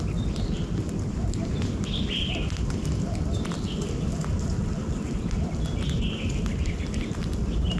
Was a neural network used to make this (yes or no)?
no